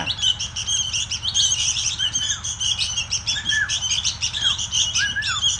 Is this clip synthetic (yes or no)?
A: yes